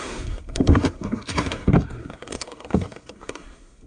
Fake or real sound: fake